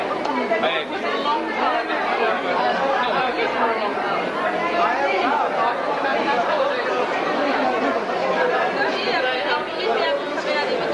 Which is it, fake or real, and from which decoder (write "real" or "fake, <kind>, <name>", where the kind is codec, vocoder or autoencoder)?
real